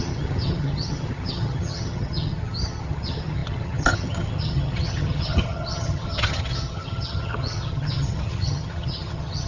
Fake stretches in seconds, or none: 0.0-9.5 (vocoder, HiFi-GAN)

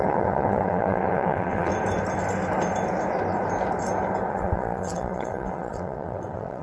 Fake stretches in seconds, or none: 0.0-1.7 (vocoder, WaveNeXt); 4.3-6.6

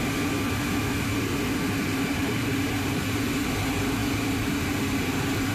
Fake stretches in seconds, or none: 1.9-3.0 (vocoder, BigVGAN v2)

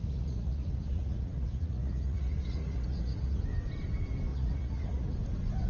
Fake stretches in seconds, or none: 0.0-3.4 (vocoder, Vocos); 4.3-5.1